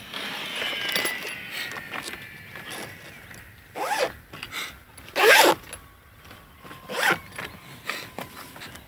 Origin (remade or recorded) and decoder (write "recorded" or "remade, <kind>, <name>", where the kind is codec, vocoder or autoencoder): recorded